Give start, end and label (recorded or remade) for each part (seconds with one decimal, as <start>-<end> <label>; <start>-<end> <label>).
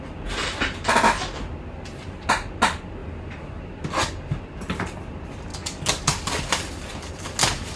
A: 0.0-5.5 recorded; 5.5-6.4 remade; 6.4-7.8 recorded